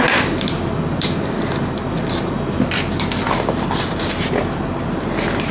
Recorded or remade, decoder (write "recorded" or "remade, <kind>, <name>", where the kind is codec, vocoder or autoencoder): recorded